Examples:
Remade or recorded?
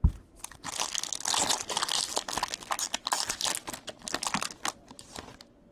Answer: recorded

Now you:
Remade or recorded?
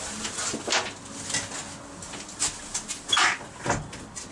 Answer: recorded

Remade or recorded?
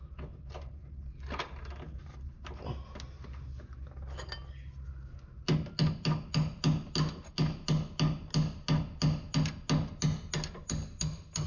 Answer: recorded